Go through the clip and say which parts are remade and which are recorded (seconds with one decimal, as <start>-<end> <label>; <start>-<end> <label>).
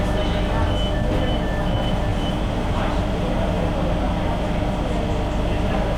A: 0.0-2.1 recorded; 2.1-3.3 remade; 3.3-6.0 recorded